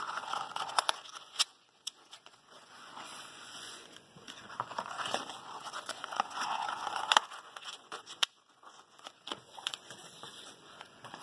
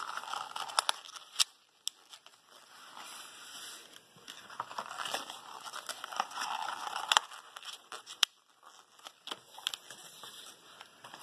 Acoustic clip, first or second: second